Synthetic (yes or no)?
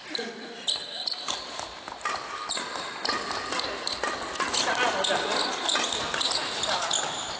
no